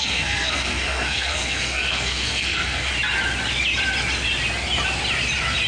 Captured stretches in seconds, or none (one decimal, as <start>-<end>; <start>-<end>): 2.9-5.7